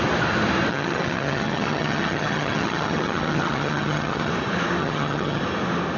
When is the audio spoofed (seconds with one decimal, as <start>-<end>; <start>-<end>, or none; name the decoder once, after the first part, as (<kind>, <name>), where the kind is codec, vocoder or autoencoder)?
0.7-4.3 (vocoder, HiFi-GAN); 4.8-5.4